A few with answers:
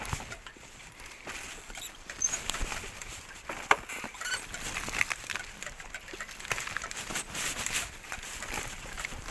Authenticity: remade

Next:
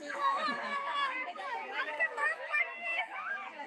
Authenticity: remade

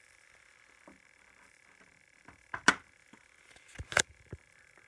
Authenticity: recorded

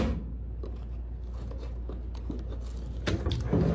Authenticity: recorded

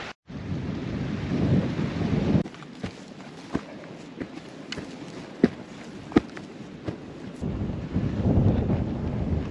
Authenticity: recorded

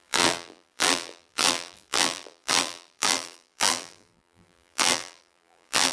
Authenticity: remade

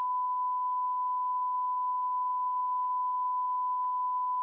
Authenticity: recorded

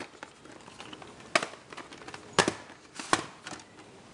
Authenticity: recorded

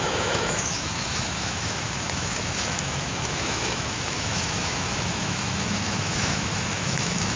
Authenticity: remade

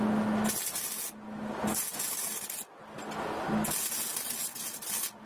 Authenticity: recorded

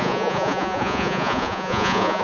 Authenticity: remade